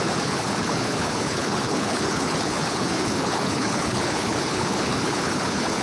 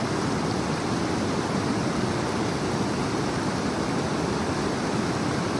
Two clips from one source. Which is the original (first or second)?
second